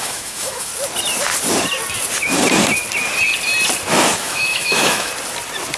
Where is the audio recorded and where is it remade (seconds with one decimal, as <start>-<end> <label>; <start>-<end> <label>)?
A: 0.0-0.7 remade; 0.7-4.2 recorded; 4.2-5.1 remade; 5.1-5.8 recorded